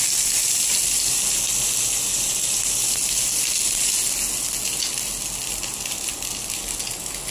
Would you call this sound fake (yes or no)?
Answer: no